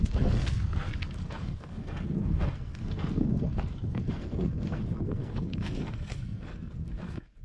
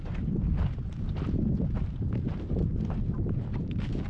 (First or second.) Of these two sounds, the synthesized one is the first